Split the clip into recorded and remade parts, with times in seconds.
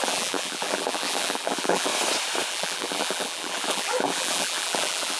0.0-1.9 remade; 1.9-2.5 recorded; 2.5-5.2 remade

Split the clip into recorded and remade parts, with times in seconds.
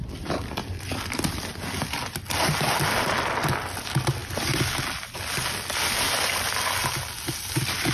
0.0-1.4 remade; 1.4-4.2 recorded; 4.2-4.7 remade; 4.7-7.9 recorded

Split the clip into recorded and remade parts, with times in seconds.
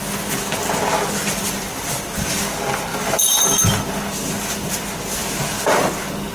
0.0-1.2 recorded; 1.2-2.4 remade; 2.4-2.9 recorded; 2.9-4.7 remade; 4.7-6.3 recorded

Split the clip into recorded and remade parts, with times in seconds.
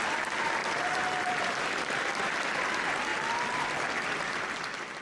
0.0-0.6 recorded; 0.6-2.2 remade; 2.2-3.1 recorded; 3.1-5.0 remade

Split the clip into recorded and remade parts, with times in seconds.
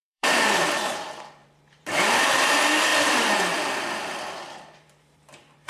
0.0-0.8 remade; 0.8-1.4 recorded; 1.4-2.2 remade; 2.2-2.9 recorded; 2.9-5.7 remade